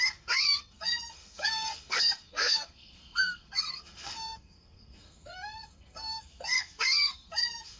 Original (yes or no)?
no